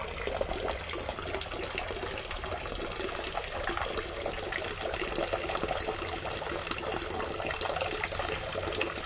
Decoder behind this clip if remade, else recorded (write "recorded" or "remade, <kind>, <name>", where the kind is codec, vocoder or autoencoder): recorded